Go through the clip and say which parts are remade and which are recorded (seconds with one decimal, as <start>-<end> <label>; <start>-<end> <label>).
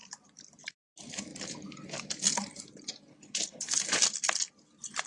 0.0-3.1 recorded; 3.1-3.7 remade; 3.7-5.1 recorded